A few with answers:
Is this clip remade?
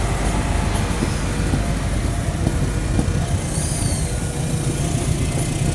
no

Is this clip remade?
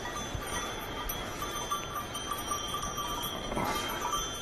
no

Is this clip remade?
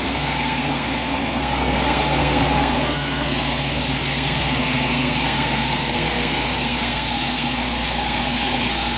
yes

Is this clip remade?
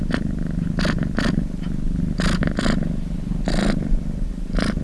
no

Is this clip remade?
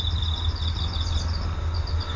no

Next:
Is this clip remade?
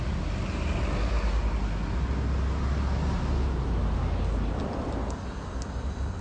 no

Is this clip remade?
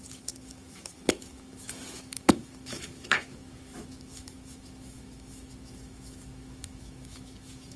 yes